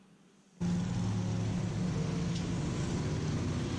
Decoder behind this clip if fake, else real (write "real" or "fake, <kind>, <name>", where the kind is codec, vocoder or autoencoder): real